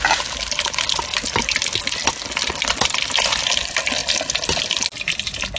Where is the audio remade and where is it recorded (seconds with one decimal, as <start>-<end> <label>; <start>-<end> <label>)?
0.0-5.6 recorded